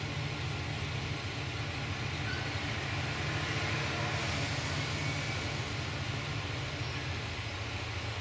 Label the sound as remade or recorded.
recorded